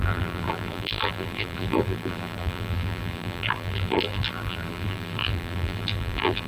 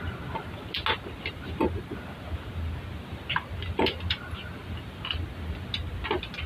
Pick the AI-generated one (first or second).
first